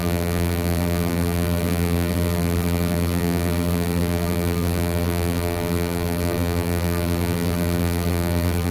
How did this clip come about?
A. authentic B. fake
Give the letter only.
B